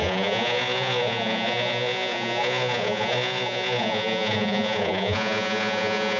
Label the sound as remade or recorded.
remade